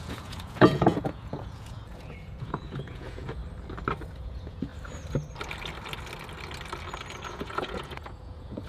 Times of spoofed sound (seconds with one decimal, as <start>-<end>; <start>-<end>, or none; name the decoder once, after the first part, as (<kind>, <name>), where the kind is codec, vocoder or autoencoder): 0.0-3.4 (vocoder, Vocos); 4.1-4.7; 7.3-8.7